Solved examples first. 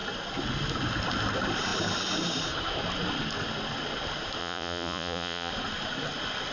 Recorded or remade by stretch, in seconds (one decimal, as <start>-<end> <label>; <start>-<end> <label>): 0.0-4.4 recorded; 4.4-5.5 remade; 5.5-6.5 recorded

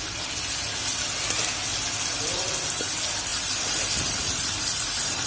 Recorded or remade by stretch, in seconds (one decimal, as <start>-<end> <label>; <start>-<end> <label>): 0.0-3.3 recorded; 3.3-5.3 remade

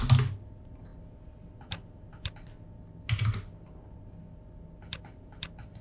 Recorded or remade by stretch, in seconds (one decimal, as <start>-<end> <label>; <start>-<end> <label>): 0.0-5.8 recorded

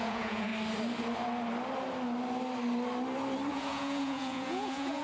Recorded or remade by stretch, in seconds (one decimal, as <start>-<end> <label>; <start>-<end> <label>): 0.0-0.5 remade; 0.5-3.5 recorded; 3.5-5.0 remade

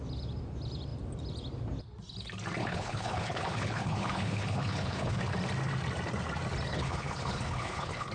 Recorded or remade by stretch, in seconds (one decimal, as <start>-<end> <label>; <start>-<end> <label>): 0.0-2.6 recorded; 2.6-5.2 remade; 5.2-6.7 recorded; 6.7-8.1 remade